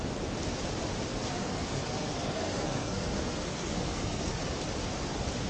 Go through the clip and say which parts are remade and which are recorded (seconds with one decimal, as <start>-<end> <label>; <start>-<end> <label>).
0.0-1.1 recorded; 1.1-4.4 remade; 4.4-5.5 recorded